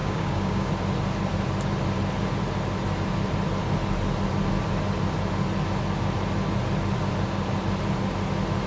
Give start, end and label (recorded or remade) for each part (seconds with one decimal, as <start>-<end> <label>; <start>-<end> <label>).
0.0-0.7 remade; 0.7-8.7 recorded